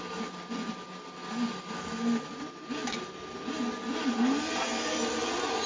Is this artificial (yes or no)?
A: no